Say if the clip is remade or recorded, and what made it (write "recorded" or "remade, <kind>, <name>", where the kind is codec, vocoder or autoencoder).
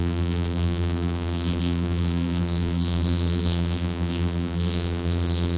remade, vocoder, BigVGAN v2